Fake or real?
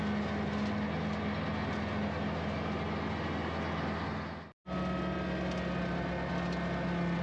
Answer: real